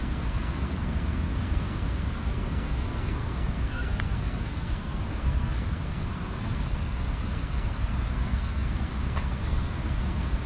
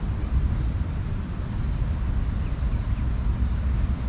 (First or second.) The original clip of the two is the second